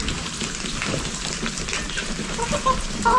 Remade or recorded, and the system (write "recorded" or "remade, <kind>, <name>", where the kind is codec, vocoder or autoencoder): recorded